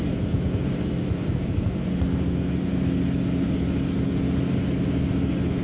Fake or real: real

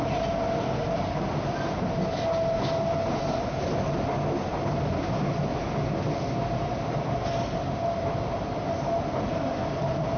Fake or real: real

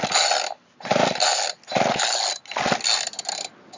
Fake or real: real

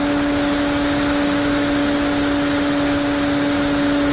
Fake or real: real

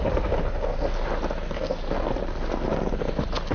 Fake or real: real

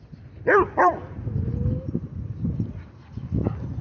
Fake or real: real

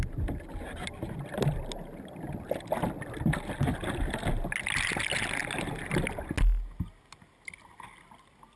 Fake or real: real